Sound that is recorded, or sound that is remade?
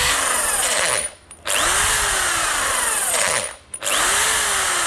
recorded